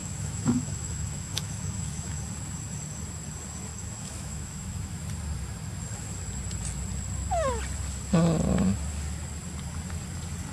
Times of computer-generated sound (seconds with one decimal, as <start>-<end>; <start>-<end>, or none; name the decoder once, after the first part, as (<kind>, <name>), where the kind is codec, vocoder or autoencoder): 0.0-2.2 (autoencoder, DAC-VAE); 3.7-5.0